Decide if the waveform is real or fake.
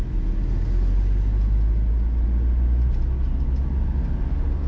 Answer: real